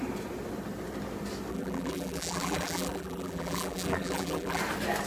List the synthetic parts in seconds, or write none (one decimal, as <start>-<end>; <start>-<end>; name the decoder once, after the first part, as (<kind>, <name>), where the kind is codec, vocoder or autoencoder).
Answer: 1.5-4.6 (vocoder, BigVGAN v2)